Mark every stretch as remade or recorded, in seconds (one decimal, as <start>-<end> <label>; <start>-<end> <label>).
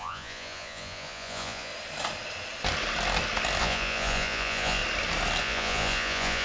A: 0.0-1.7 remade; 1.7-3.6 recorded; 3.6-4.8 remade; 4.8-5.4 recorded; 5.4-6.4 remade